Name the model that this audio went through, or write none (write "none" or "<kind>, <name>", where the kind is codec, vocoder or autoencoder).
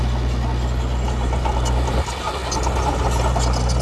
none